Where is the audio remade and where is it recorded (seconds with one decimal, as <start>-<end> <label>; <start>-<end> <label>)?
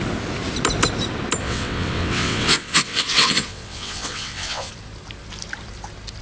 0.0-1.4 recorded; 1.4-4.7 remade; 4.7-6.2 recorded